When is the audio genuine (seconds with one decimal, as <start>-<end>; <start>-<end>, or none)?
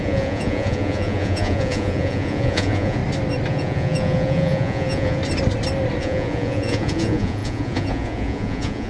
3.0-3.5; 5.2-6.0